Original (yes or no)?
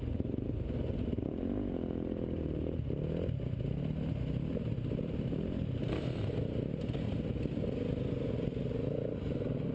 yes